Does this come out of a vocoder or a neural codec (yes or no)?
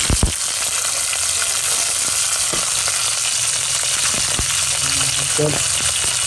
no